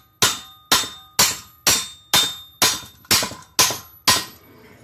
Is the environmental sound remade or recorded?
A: recorded